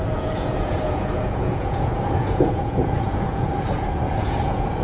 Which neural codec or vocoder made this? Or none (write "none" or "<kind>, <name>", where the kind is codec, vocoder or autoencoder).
vocoder, Vocos